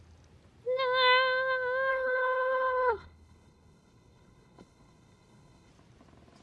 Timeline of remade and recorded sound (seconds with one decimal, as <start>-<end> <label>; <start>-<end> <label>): 0.0-1.9 recorded; 1.9-5.7 remade; 5.7-6.4 recorded